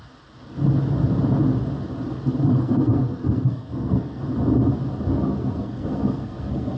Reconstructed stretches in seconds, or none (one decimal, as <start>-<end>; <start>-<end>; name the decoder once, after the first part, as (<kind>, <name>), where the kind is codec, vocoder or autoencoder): 2.5-4.2 (codec, SNAC); 5.4-6.8